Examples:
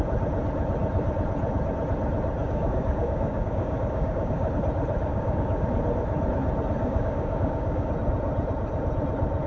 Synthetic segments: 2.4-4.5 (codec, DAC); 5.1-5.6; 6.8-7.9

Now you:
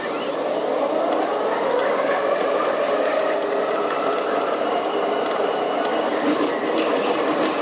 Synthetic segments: none

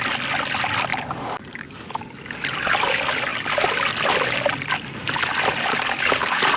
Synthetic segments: 0.9-2.4 (codec, DAC); 5.7-6.6

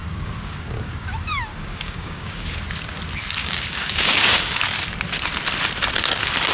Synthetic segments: 0.0-1.1 (codec, DAC); 1.5-2.6; 3.4-4.6

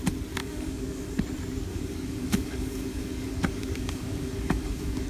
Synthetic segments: 0.4-1.2 (codec, DAC); 1.7-5.1